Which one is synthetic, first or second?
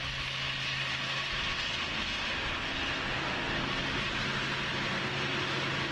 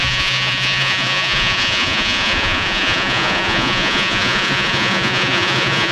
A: second